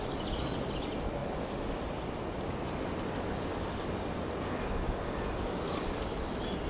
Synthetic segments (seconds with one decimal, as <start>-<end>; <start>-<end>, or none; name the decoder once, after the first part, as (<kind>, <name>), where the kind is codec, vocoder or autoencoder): none

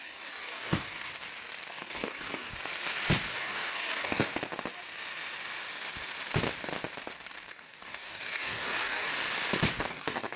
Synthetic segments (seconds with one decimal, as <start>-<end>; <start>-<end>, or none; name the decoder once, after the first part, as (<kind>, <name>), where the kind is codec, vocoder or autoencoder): 0.0-1.1 (codec, DAC); 1.7-2.5; 3.3-4.3; 7.5-9.1; 9.9-10.4